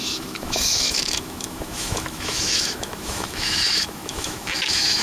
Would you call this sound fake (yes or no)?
yes